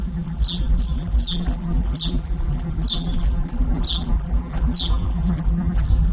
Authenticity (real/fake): fake